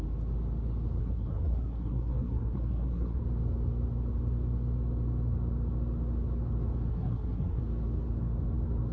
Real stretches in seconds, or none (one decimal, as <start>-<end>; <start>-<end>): 0.0-1.0; 3.2-6.9; 7.6-8.9